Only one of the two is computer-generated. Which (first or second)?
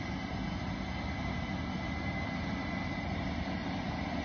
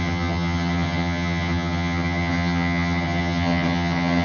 second